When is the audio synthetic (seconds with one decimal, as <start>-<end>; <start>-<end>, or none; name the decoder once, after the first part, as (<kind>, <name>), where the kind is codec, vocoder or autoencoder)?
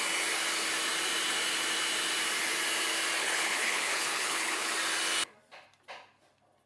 3.2-4.7 (codec, HILCodec)